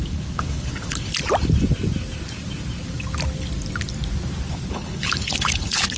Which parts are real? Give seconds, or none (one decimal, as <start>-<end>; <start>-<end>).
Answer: 1.1-4.7

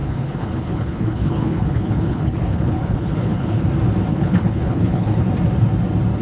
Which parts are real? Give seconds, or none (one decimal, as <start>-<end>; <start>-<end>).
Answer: 3.6-4.1; 5.2-6.2

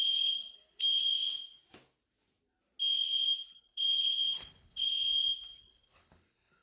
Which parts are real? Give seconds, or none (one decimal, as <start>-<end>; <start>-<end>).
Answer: 1.1-3.5; 4.9-5.6